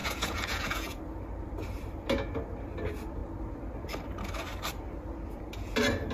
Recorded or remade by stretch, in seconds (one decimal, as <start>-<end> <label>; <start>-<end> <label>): 0.0-1.0 remade; 1.0-6.1 recorded